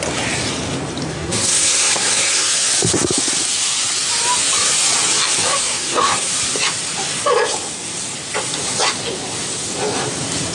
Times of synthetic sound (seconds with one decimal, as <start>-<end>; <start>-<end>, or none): 1.1-2.5; 5.6-6.3